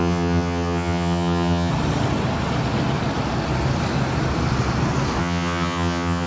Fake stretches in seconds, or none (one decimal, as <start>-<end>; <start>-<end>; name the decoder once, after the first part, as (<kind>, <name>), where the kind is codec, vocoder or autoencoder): 0.0-1.7 (vocoder, HiFi-GAN); 5.2-6.3